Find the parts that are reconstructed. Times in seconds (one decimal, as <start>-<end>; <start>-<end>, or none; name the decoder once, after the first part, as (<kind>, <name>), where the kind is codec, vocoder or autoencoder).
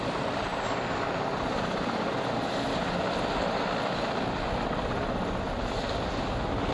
none